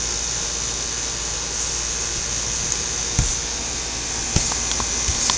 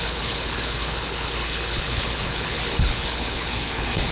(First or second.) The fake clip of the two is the second